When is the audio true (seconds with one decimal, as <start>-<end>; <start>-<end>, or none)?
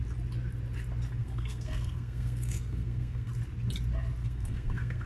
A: 0.0-1.2; 3.3-4.2